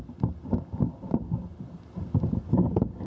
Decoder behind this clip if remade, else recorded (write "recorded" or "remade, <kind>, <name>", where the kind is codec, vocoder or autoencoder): recorded